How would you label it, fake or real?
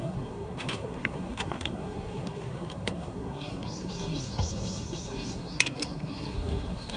fake